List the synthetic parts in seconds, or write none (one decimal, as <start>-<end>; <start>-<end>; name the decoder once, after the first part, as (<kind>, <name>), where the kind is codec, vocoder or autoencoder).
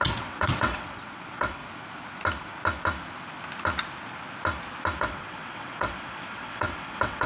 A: 0.0-1.6 (vocoder, WaveNeXt); 5.0-7.3